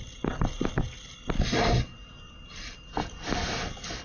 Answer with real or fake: real